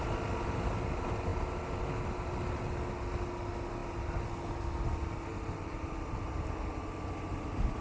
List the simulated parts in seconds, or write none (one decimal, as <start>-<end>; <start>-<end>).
none